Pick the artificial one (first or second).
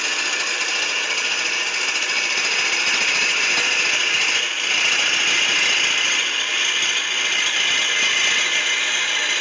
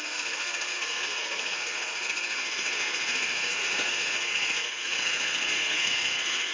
second